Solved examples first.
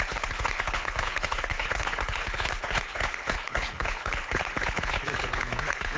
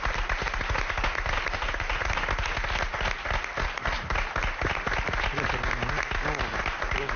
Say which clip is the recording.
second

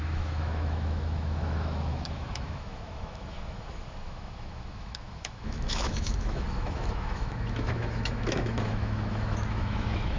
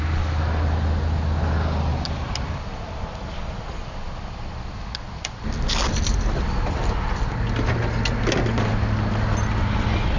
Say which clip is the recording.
second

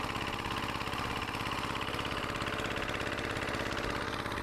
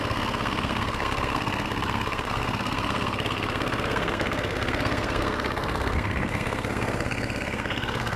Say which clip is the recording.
first